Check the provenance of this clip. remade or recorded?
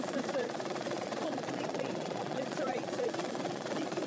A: remade